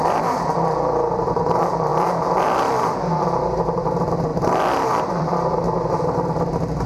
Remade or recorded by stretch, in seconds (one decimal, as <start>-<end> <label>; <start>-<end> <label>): 0.0-1.9 remade; 1.9-3.9 recorded; 3.9-4.3 remade; 4.3-5.0 recorded; 5.0-6.9 remade